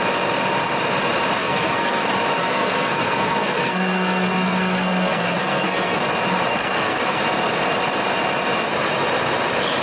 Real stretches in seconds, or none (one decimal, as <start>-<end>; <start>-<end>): 0.0-1.4; 2.0-2.4; 6.0-6.5; 7.2-9.8